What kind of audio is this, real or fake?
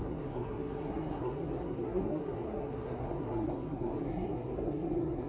fake